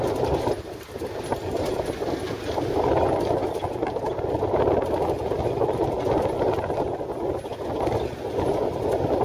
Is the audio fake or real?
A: real